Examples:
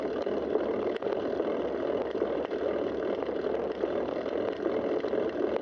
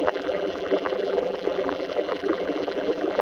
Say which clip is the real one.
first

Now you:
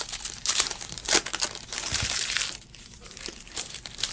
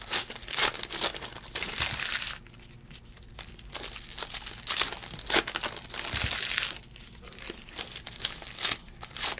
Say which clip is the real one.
second